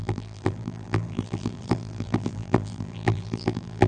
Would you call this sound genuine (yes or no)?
no